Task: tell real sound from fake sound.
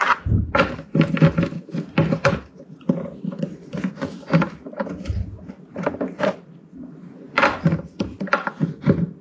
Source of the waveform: real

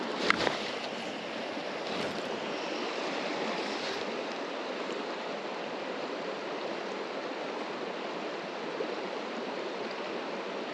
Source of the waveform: real